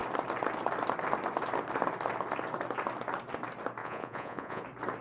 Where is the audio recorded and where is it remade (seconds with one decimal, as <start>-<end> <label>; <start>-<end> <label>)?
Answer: 0.0-3.8 recorded; 3.8-4.6 remade; 4.6-5.0 recorded